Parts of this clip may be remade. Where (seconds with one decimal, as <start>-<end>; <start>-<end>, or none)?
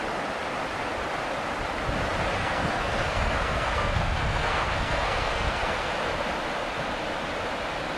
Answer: 2.4-5.9